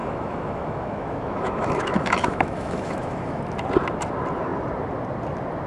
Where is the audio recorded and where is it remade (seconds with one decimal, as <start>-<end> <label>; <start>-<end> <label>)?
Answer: 0.0-3.4 remade; 3.4-5.7 recorded